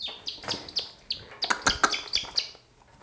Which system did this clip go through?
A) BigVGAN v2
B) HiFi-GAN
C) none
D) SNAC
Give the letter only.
C